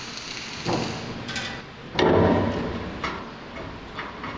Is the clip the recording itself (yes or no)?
yes